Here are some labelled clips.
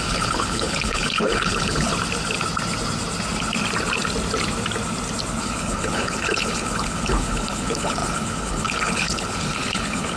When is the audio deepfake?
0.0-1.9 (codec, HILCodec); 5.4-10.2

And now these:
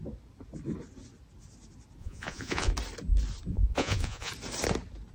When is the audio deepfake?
2.0-2.7 (vocoder, Vocos); 3.5-4.3

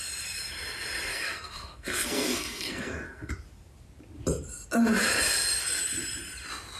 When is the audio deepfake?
1.1-3.3 (codec, SNAC)

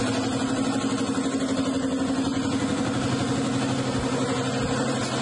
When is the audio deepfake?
none

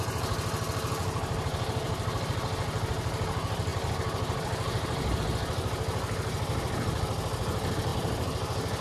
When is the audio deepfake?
1.0-2.3 (vocoder, BigVGAN v2); 3.7-5.2; 7.9-8.8

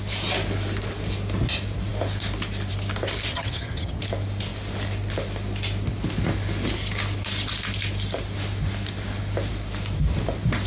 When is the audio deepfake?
3.3-4.0 (vocoder, HiFi-GAN)

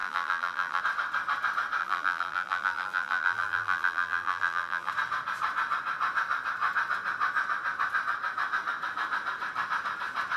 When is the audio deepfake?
0.0-0.8 (vocoder, BigVGAN v2); 1.8-4.9